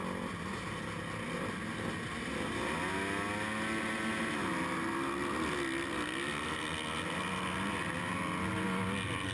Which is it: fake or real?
real